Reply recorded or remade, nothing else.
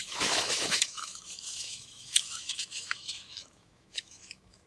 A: remade